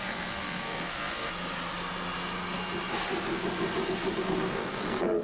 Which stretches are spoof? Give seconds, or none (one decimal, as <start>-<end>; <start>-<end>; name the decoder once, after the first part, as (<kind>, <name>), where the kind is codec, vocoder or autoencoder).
0.0-1.3 (codec, SNAC); 4.2-5.2